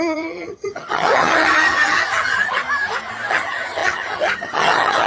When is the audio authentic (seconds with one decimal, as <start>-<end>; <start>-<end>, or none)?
2.6-3.3